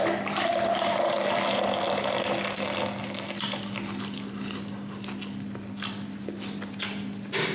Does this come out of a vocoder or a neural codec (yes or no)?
no